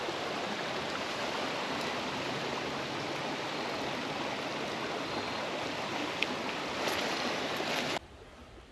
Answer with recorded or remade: recorded